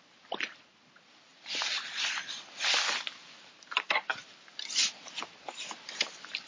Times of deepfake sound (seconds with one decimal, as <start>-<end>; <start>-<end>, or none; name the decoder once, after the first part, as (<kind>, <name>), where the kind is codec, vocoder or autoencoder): none